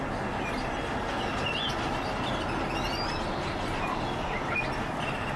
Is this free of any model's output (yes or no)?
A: yes